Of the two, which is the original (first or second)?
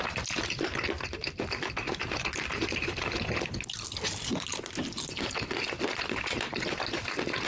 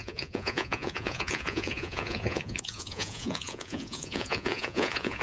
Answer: first